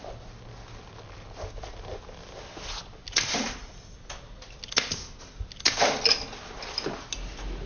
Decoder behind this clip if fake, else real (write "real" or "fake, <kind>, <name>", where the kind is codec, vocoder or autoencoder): real